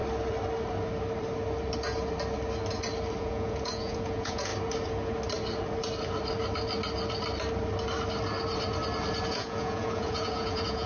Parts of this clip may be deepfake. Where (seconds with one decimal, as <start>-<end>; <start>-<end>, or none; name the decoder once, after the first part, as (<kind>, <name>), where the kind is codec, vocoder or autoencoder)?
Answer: 3.2-4.5 (vocoder, Vocos); 9.3-10.9